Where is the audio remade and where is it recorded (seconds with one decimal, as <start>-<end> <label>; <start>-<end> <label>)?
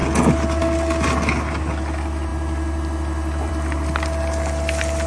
0.0-5.1 recorded